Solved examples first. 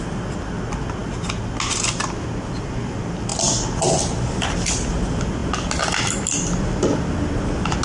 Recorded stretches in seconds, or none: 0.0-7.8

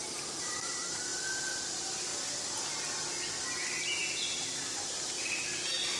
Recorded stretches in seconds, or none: 0.0-6.0

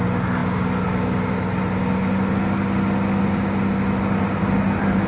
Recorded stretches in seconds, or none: 0.0-5.1

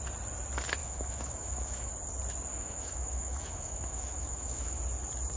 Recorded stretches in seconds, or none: 0.0-0.8; 1.9-2.5; 4.8-5.4

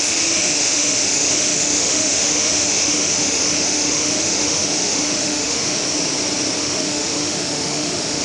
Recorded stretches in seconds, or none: 5.8-6.6